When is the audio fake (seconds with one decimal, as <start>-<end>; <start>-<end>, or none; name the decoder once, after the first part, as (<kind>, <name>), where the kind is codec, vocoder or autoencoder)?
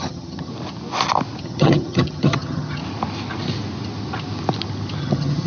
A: 0.0-0.5 (vocoder, HiFi-GAN); 1.4-2.8; 5.0-5.5